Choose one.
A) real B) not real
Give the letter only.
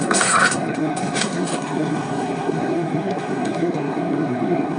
B